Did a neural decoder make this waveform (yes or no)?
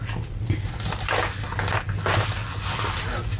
no